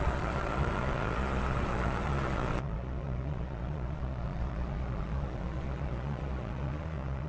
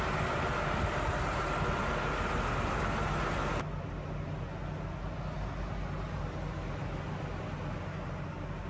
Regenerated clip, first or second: first